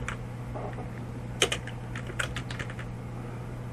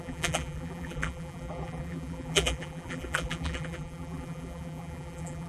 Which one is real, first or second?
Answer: first